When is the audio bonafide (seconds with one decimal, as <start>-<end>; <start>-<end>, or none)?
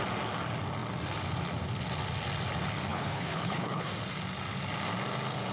0.0-2.9; 3.9-5.5